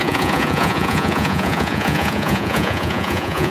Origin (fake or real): fake